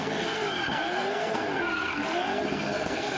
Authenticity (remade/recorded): remade